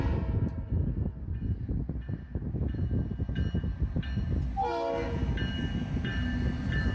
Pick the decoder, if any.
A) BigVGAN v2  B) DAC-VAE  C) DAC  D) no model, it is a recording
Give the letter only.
D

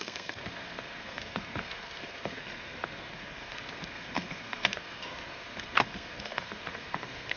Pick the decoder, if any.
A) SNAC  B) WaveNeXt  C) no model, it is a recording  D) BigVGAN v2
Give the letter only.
A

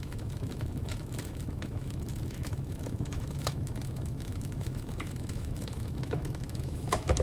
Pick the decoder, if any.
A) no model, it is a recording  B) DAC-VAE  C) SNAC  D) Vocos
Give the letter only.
B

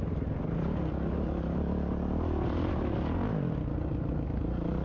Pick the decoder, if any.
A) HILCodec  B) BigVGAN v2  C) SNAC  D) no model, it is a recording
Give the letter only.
D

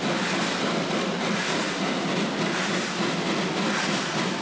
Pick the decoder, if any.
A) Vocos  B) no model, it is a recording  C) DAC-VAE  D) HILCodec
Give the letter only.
B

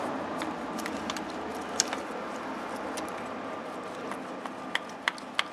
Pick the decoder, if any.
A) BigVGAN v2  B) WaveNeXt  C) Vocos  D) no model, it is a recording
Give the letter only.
D